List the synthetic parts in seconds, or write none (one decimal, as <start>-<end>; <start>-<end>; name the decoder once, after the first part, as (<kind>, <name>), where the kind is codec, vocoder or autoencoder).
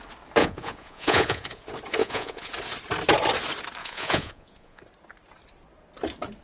0.4-1.6 (vocoder, Vocos); 2.0-2.5; 3.8-4.8